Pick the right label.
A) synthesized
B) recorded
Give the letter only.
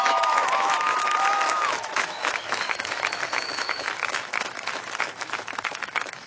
A